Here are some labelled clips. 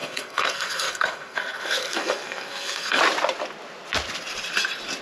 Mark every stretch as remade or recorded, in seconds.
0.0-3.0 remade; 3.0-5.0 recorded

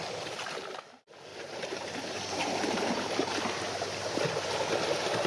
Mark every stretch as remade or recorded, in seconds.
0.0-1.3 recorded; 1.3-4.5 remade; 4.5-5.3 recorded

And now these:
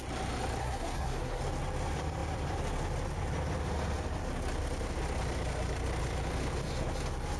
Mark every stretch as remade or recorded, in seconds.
0.0-0.6 recorded; 0.6-1.4 remade; 1.4-7.4 recorded